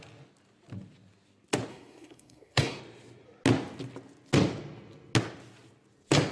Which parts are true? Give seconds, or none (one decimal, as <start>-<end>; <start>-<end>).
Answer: 0.0-1.7; 2.8-6.3